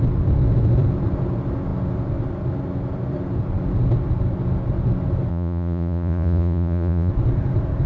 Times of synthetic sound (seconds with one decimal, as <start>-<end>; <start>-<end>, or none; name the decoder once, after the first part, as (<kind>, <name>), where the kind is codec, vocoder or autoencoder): 5.3-7.1 (vocoder, Vocos)